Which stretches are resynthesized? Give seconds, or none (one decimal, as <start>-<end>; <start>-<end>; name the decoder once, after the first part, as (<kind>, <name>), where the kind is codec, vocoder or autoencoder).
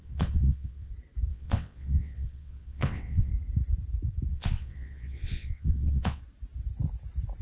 0.0-0.9 (vocoder, WaveNeXt); 1.3-3.3; 4.3-6.2